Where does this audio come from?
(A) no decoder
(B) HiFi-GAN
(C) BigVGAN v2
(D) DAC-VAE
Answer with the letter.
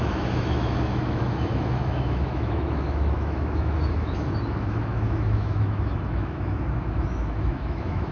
D